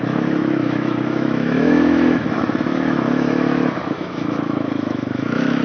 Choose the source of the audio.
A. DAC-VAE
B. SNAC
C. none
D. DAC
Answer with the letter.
A